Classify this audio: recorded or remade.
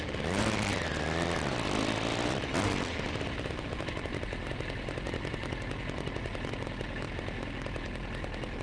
recorded